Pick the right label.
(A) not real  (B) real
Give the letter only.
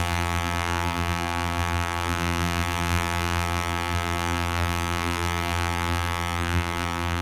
A